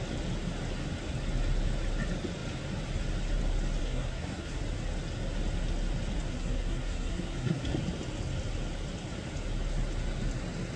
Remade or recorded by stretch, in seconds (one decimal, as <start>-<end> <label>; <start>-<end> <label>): 0.0-3.8 recorded; 3.8-4.6 remade; 4.6-6.3 recorded; 6.3-7.6 remade; 7.6-10.8 recorded